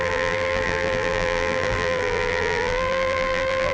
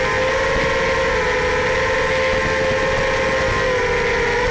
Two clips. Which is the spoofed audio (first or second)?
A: first